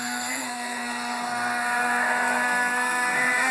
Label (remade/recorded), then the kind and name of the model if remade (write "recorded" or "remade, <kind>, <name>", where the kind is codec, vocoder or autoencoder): remade, codec, SNAC